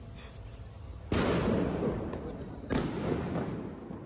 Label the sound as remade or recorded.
recorded